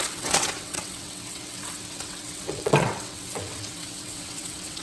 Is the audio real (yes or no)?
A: no